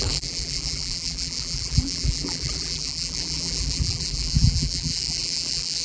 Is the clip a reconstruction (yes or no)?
yes